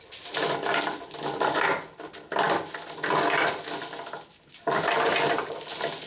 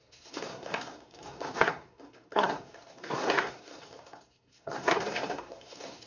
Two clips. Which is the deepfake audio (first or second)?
second